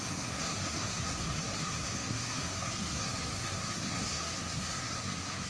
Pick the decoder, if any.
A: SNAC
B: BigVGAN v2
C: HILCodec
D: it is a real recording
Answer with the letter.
A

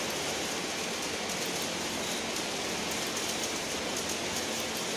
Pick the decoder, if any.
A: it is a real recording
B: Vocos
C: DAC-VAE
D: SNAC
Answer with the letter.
A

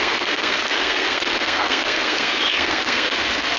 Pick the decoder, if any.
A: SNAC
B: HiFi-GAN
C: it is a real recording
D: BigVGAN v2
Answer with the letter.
A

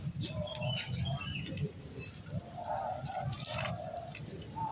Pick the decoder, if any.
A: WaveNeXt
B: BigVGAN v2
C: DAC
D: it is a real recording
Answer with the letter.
B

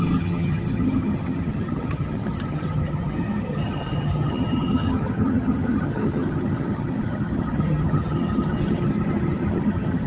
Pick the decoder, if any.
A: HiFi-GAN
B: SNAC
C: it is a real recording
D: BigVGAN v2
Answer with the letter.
A